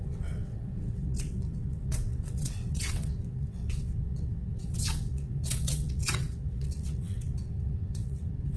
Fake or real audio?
fake